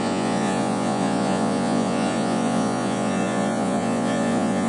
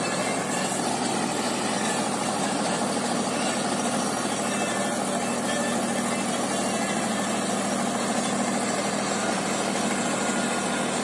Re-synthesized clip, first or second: first